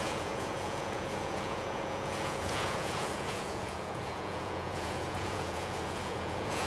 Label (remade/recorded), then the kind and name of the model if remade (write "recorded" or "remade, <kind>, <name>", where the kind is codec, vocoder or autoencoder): remade, vocoder, Vocos